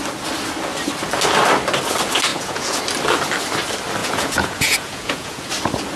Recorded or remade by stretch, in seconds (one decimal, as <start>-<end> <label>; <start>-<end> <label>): 0.0-2.3 recorded; 2.3-2.8 remade; 2.8-4.0 recorded; 4.0-5.5 remade; 5.5-6.0 recorded